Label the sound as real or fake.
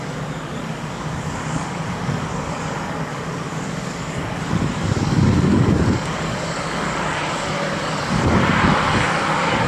fake